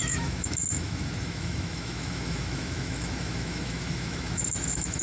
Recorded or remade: remade